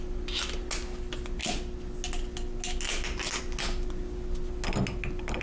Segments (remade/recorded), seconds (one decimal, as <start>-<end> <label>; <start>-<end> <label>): 0.0-5.4 recorded